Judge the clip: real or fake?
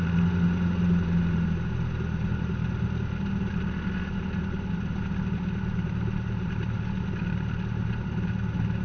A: real